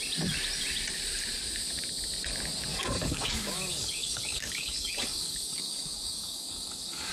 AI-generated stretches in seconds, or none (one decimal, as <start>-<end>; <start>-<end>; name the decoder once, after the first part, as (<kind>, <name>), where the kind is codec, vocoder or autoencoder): 2.7-7.1 (codec, DAC)